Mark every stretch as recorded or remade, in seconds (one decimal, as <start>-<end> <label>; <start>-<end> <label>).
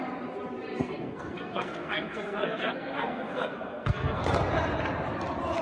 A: 0.0-0.8 recorded; 0.8-4.2 remade; 4.2-5.6 recorded